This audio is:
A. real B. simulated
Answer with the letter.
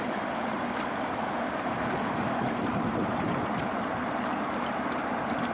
B